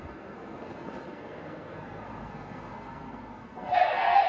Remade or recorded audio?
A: remade